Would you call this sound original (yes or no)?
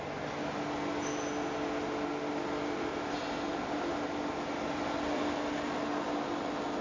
yes